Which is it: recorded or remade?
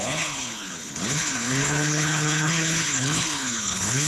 remade